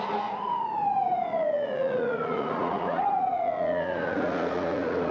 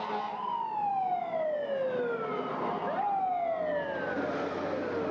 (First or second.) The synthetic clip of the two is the first